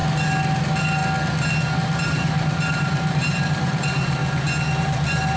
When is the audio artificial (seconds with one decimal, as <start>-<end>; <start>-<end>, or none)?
0.6-1.0; 1.7-4.2; 4.8-5.4